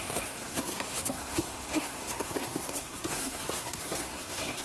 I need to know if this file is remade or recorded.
remade